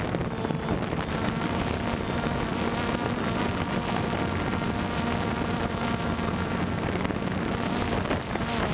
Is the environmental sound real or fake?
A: real